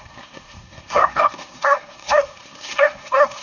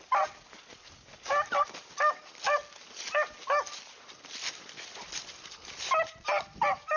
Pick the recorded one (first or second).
second